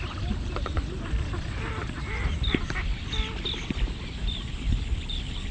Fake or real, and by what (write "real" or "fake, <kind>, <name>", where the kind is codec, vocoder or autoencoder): real